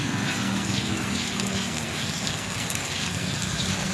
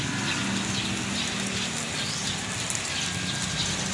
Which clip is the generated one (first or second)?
first